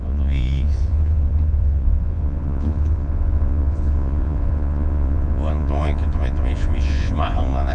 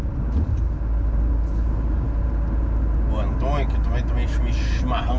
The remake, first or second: first